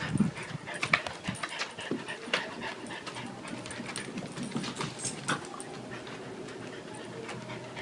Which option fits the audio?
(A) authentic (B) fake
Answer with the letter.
A